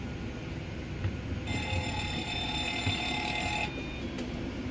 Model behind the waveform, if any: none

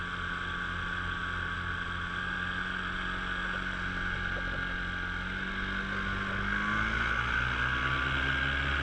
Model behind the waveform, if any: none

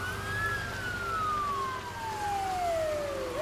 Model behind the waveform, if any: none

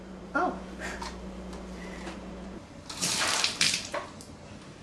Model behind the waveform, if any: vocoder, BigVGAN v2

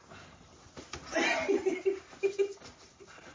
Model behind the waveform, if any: vocoder, BigVGAN v2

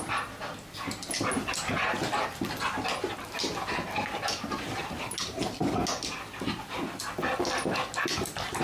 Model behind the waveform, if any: none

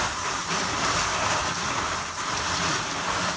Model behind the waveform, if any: vocoder, BigVGAN v2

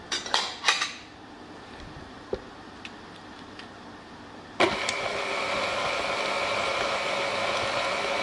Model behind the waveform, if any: vocoder, BigVGAN v2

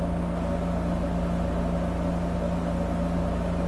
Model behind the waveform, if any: none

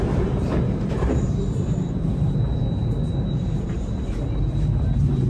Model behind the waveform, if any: vocoder, BigVGAN v2